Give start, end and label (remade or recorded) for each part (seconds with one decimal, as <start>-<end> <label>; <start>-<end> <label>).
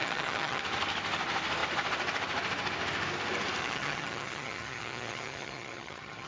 0.0-0.6 remade; 0.6-3.6 recorded; 3.6-6.3 remade